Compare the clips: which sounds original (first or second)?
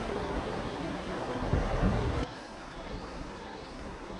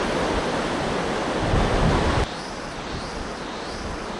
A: second